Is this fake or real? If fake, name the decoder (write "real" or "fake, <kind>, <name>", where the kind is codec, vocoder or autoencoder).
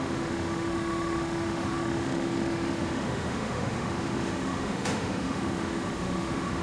fake, autoencoder, DAC-VAE